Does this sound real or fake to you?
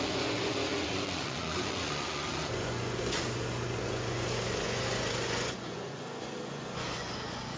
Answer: fake